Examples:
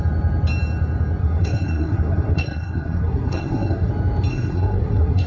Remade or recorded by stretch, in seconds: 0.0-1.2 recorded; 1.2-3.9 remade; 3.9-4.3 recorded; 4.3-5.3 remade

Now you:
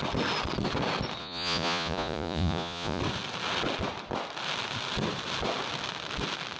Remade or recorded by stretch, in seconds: 0.0-1.2 recorded; 1.2-3.0 remade; 3.0-6.6 recorded

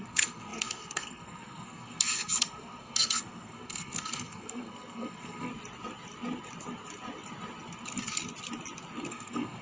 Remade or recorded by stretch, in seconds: 0.0-5.5 remade; 5.5-9.1 recorded; 9.1-9.6 remade

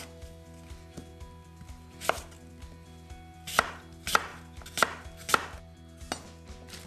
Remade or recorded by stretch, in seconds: 0.0-6.9 recorded